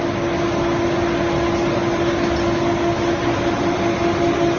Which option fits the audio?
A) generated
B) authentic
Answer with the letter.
B